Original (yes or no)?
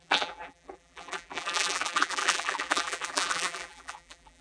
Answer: no